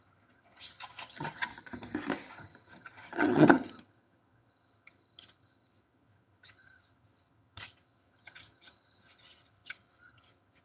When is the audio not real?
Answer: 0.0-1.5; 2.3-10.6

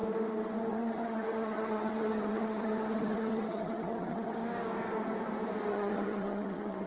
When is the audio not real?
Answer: 0.7-4.4; 5.7-6.9

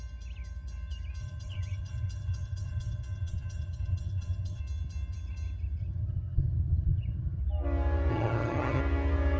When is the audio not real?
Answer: 1.2-4.6; 5.8-7.4; 8.1-8.8